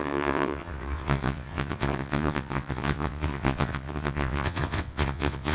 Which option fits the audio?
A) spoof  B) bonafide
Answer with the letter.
A